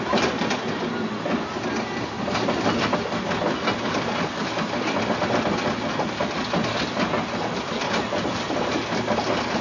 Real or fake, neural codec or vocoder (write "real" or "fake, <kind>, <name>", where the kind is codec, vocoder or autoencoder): real